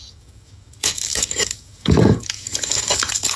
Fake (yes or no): yes